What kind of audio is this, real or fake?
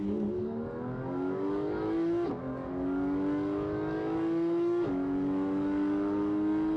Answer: fake